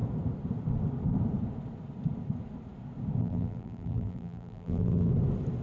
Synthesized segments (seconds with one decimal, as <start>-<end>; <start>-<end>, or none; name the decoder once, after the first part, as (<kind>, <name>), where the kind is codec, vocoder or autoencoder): 3.2-5.1 (vocoder, BigVGAN v2)